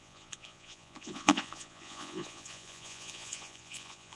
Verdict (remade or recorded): remade